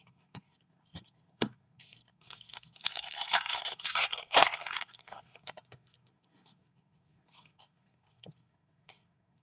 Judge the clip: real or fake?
fake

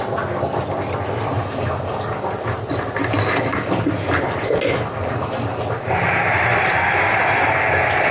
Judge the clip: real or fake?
real